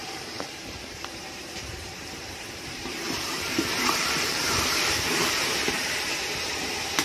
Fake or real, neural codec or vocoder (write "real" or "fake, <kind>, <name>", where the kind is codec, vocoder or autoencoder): fake, vocoder, BigVGAN v2